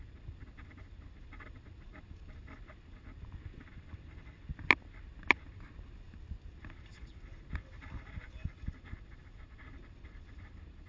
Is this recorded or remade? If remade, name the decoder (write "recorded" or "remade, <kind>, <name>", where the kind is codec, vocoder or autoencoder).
recorded